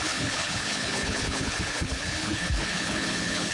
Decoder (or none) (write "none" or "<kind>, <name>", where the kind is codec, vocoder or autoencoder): codec, HILCodec